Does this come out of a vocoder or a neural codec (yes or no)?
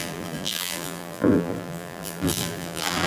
yes